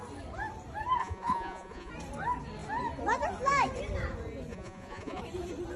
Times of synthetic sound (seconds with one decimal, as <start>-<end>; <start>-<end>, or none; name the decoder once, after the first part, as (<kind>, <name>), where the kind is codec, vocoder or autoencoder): 1.0-1.9 (vocoder, Vocos); 4.5-5.2